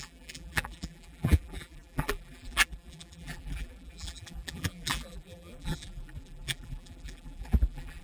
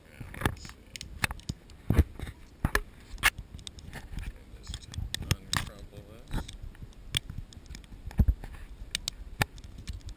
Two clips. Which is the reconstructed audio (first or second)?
first